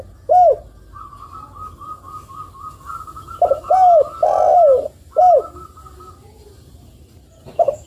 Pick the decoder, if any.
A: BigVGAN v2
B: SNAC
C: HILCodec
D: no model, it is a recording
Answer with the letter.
D